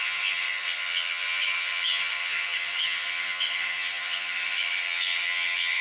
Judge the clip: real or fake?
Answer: fake